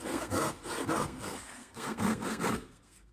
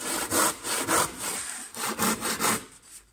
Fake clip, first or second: first